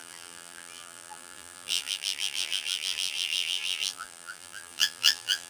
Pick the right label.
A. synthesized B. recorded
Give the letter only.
A